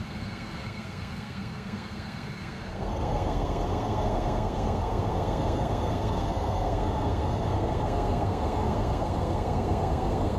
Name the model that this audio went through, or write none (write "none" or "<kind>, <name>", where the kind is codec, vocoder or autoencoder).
codec, SNAC